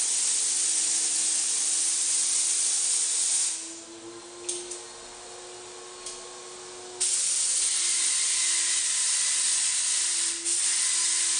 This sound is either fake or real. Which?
real